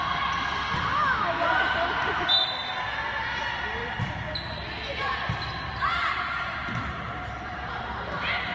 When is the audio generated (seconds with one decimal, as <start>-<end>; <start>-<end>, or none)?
none